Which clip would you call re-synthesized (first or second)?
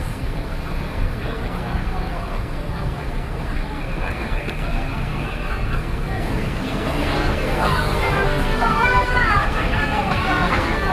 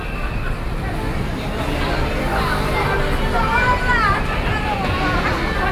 first